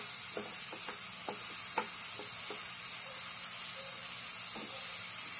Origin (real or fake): real